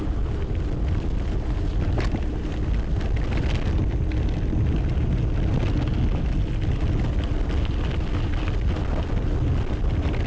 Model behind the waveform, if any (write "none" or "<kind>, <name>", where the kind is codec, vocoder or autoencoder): none